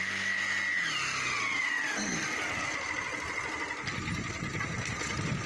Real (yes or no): yes